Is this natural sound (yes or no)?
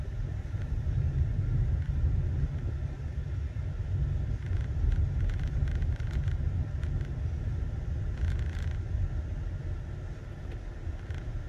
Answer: yes